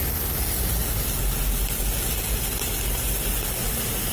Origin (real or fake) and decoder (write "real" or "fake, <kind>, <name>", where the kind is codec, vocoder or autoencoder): real